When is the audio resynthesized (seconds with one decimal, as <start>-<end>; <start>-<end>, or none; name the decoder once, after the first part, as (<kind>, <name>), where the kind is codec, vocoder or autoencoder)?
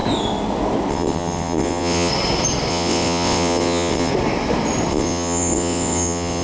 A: 0.9-2.1 (vocoder, WaveNeXt); 2.7-4.1; 4.9-6.4